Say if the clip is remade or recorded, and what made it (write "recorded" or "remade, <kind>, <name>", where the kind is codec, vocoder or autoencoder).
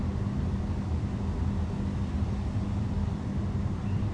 recorded